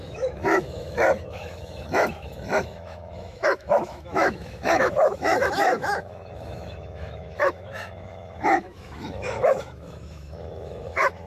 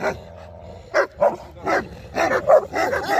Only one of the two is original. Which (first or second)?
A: second